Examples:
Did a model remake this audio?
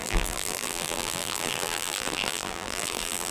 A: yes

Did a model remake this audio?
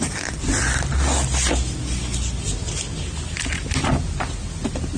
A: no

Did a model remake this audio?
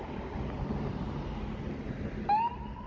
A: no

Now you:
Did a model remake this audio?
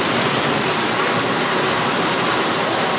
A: no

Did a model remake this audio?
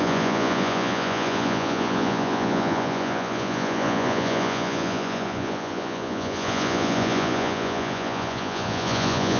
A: yes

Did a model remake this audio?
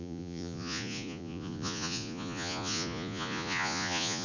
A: yes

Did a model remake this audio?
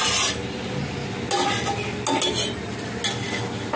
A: no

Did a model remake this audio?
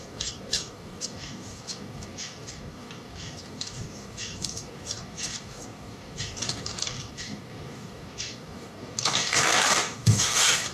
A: yes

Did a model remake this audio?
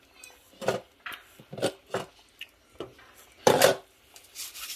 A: no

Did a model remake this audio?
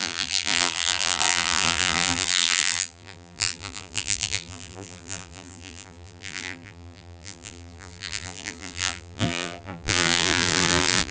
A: yes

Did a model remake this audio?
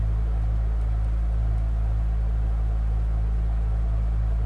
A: no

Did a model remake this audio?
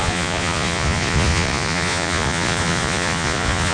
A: yes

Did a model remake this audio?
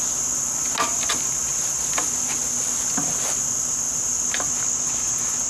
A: no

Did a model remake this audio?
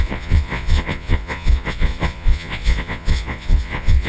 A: yes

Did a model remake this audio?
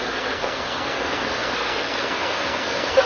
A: yes